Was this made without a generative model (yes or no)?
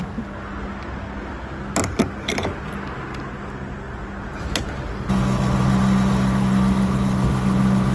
yes